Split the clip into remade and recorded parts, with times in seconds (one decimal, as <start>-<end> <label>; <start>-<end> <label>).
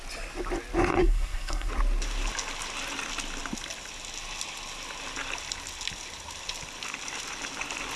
0.0-0.9 recorded; 0.9-1.7 remade; 1.7-8.0 recorded